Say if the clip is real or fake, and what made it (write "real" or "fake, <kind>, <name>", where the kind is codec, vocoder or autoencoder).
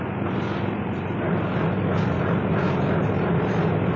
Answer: real